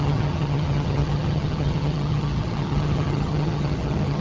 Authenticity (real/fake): fake